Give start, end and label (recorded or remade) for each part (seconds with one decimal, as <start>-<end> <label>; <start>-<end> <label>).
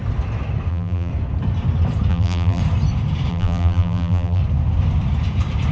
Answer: 0.0-0.7 recorded; 0.7-1.1 remade; 1.1-2.1 recorded; 2.1-2.6 remade; 2.6-3.3 recorded; 3.3-4.4 remade; 4.4-5.7 recorded